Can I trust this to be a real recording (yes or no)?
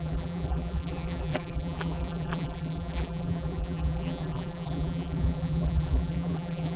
no